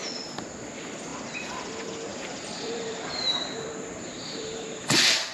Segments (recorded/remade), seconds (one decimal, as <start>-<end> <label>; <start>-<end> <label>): 0.0-2.1 recorded; 2.1-5.3 remade